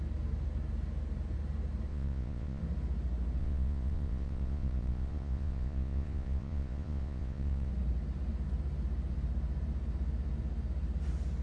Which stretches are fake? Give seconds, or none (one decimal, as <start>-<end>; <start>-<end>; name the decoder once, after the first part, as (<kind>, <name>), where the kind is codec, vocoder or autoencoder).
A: 1.9-2.6 (vocoder, Vocos); 3.4-7.7